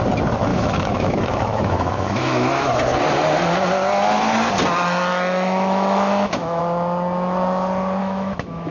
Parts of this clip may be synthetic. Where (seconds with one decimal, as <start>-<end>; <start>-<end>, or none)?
0.5-2.7; 5.1-6.6; 8.0-8.7